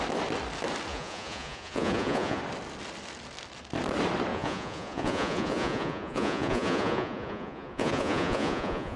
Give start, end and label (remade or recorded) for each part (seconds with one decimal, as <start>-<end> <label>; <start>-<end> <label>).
0.0-0.9 recorded; 0.9-2.4 remade; 2.4-4.3 recorded; 4.3-9.0 remade